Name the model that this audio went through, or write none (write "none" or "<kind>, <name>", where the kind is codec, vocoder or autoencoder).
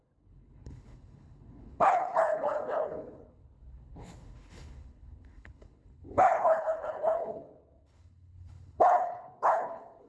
codec, HILCodec